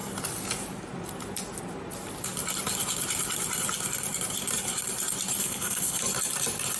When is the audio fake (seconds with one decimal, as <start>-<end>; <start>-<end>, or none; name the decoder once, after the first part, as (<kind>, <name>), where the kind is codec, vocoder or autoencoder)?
5.4-6.0 (codec, SNAC)